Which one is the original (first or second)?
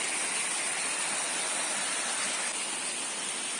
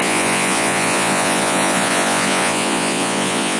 first